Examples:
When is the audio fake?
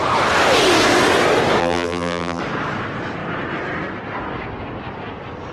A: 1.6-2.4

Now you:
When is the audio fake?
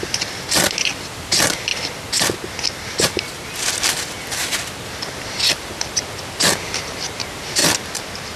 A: 0.0-1.7; 3.8-4.4; 5.0-7.6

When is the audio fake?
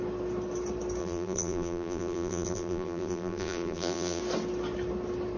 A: 1.0-4.2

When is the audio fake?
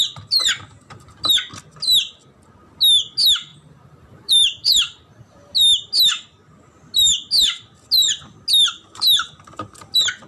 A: 3.5-5.5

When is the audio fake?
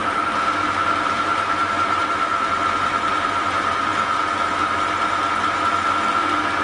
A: 0.0-3.9